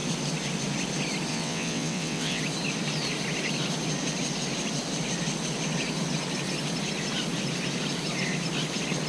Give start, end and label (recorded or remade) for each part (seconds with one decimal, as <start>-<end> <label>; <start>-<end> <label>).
0.0-1.3 recorded; 1.3-2.4 remade; 2.4-9.1 recorded

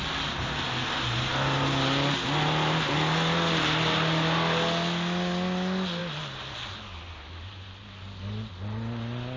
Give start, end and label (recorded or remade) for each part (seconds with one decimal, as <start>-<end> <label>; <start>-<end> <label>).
0.0-9.4 recorded

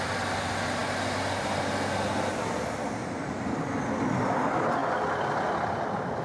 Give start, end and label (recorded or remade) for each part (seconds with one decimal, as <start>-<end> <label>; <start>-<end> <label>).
0.0-6.2 recorded

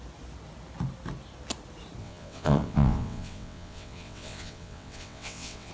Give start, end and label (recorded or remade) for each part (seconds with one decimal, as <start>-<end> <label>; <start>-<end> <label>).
0.0-2.0 recorded; 2.0-5.7 remade

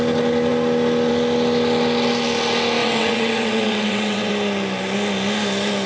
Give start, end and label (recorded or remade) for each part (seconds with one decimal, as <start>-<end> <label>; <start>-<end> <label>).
0.0-2.8 recorded; 2.8-4.3 remade; 4.3-5.9 recorded

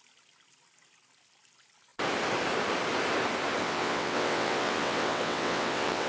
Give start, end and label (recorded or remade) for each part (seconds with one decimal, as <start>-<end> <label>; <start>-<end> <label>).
0.0-3.6 recorded; 3.6-6.1 remade

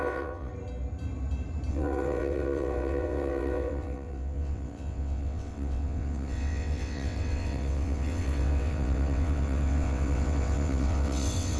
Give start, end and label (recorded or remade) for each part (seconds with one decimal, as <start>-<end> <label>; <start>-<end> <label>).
0.0-0.5 remade; 0.5-1.7 recorded; 1.7-11.6 remade